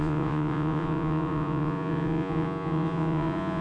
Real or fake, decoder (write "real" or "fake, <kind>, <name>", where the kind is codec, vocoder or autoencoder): fake, vocoder, Vocos